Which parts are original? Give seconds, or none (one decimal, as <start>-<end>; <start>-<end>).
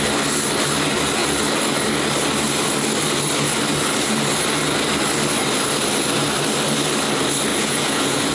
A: 0.0-7.5